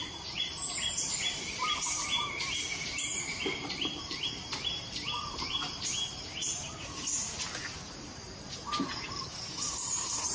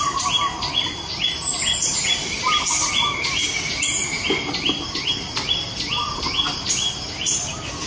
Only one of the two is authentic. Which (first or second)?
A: second